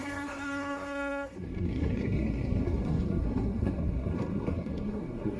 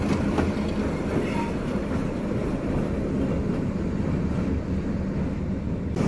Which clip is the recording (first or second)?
second